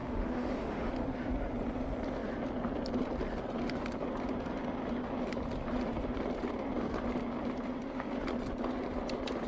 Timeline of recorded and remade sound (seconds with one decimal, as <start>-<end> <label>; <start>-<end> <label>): 0.0-0.9 remade; 0.9-9.5 recorded